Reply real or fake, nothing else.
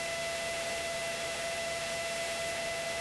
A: fake